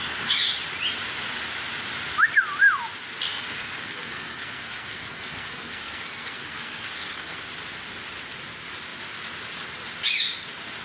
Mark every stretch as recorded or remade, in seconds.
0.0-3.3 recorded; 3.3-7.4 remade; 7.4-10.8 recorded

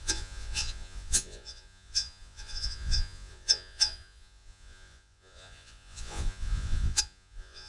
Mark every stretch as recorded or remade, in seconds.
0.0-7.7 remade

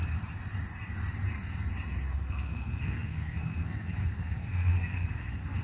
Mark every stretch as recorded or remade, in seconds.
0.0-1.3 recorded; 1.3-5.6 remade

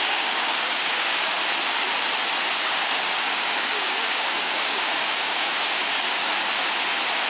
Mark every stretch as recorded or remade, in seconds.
0.0-1.3 remade; 1.3-2.6 recorded; 2.6-6.2 remade; 6.2-7.3 recorded